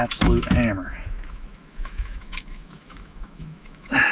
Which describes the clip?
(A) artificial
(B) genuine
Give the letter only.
A